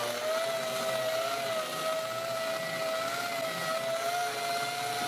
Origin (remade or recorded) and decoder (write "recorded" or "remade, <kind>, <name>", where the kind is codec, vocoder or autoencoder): recorded